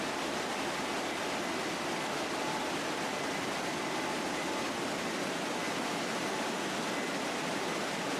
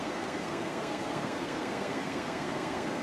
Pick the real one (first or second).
first